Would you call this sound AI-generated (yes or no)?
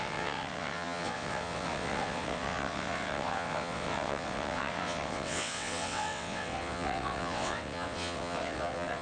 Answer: yes